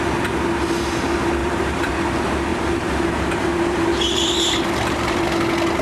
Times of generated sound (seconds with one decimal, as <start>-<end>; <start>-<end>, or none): 1.4-1.9; 2.5-5.2